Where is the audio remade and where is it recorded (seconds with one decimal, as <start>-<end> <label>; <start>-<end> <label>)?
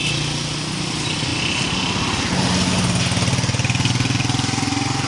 0.0-5.1 recorded